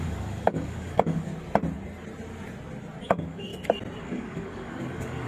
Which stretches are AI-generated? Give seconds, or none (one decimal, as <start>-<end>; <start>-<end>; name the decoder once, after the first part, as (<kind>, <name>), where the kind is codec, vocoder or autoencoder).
0.0-1.3 (codec, DAC); 3.0-3.5; 4.0-5.3